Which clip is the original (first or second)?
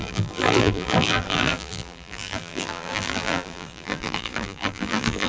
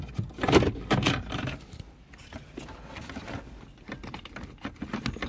second